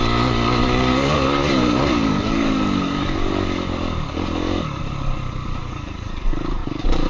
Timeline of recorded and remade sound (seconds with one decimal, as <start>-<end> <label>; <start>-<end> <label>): 0.0-0.6 recorded; 0.6-4.8 remade; 4.8-5.6 recorded; 5.6-6.1 remade; 6.1-6.6 recorded; 6.6-7.1 remade